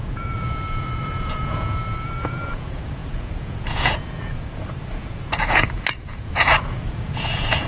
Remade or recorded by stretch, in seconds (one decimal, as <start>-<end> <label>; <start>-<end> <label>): 0.0-7.7 remade